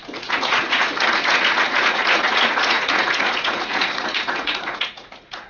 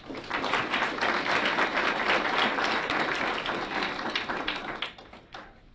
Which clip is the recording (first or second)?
second